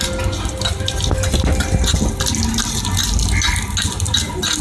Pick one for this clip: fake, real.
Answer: real